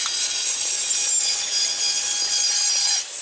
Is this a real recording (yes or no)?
yes